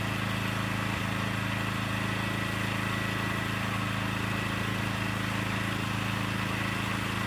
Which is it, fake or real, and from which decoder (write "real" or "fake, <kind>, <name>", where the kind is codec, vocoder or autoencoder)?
real